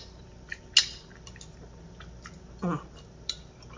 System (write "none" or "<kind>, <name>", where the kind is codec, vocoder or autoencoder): none